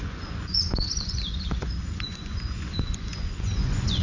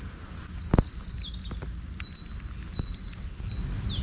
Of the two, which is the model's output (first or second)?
first